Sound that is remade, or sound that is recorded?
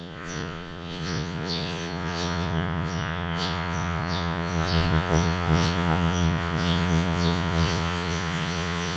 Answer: remade